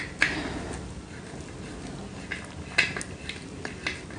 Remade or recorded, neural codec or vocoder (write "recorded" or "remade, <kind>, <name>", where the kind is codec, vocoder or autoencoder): recorded